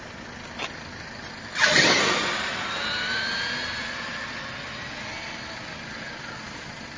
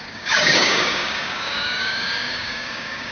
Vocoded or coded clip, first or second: second